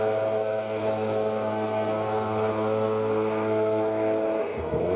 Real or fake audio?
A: fake